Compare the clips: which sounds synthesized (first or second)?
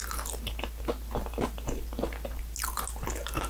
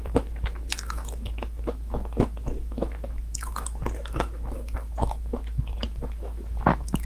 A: second